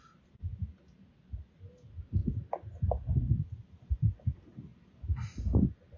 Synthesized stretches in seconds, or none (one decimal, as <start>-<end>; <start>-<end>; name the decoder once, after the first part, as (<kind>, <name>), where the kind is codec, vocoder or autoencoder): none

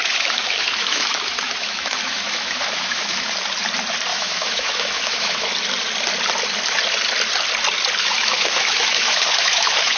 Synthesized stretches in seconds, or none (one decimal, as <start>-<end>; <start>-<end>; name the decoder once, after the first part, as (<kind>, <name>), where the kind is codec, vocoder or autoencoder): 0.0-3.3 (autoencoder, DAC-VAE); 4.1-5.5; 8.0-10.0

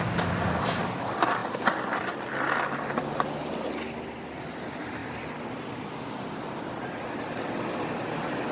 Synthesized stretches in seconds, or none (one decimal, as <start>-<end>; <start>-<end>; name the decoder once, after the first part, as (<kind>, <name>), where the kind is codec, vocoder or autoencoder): none

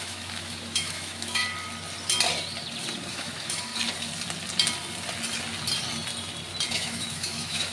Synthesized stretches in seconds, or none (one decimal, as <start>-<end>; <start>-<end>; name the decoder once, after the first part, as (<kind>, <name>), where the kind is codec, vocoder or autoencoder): 0.0-1.4 (autoencoder, DAC-VAE); 3.1-3.7; 6.7-7.7

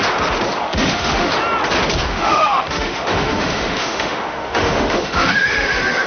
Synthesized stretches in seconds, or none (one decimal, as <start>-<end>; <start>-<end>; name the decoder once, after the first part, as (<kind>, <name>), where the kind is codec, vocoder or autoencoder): 0.6-1.3 (autoencoder, DAC-VAE); 2.1-6.1

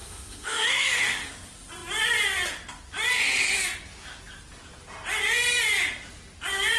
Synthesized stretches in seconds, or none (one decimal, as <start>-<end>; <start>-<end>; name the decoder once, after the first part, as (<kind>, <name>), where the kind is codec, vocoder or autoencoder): 0.0-1.3 (autoencoder, DAC-VAE)